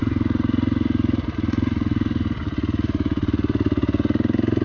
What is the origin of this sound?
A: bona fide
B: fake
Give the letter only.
A